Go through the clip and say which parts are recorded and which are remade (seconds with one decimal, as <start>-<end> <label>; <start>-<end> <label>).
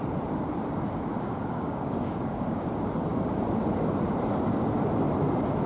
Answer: 0.0-1.1 recorded; 1.1-2.7 remade; 2.7-5.7 recorded